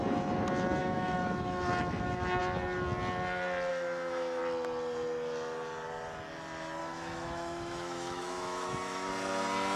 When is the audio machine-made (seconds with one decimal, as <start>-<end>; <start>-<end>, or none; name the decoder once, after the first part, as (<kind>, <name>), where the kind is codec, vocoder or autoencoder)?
0.8-2.4 (autoencoder, DAC-VAE); 3.7-4.4; 6.8-9.1